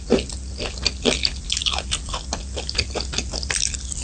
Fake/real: real